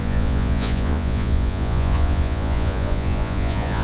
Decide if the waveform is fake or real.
fake